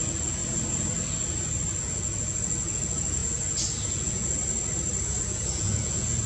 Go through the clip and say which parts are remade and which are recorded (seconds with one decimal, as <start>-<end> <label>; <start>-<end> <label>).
0.0-0.4 remade; 0.4-1.8 recorded; 1.8-4.4 remade; 4.4-5.2 recorded; 5.2-6.3 remade